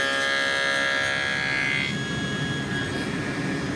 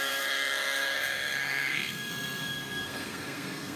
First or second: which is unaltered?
first